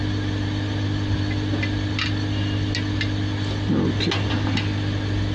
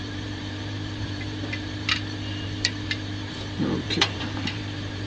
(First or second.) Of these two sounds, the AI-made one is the second